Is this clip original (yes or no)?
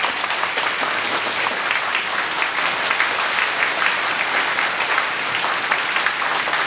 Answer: yes